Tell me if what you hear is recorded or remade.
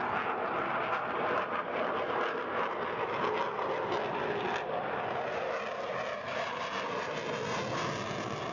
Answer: recorded